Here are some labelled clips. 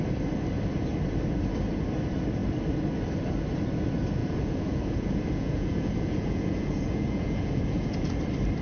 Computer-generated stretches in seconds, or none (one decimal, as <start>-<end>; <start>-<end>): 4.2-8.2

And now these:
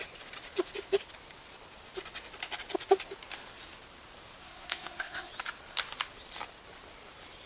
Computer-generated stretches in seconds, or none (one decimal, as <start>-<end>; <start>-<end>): 4.4-5.3

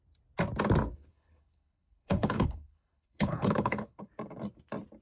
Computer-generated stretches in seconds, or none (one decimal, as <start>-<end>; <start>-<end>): 1.1-4.1

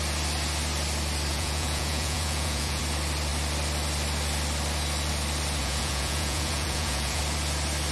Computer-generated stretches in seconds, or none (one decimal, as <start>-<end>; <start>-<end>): 1.3-2.8; 5.6-7.2

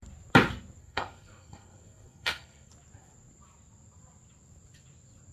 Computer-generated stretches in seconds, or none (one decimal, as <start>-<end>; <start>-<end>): 0.8-2.7

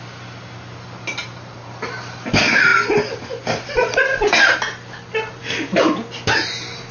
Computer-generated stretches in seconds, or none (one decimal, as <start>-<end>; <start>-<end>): 1.2-1.7